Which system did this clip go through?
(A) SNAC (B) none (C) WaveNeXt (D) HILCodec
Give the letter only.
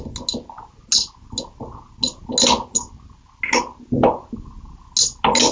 B